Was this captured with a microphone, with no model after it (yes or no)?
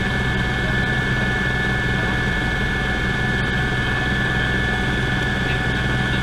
yes